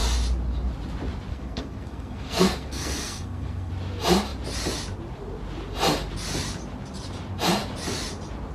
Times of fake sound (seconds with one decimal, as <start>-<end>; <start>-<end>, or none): 1.3-3.7